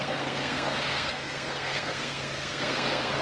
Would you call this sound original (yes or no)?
no